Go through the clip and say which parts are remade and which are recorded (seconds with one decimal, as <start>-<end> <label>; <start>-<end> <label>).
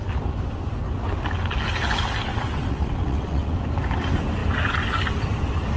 0.0-2.3 recorded; 2.3-3.6 remade; 3.6-5.8 recorded